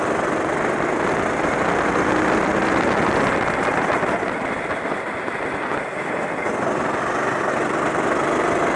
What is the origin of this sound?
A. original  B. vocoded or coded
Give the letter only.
A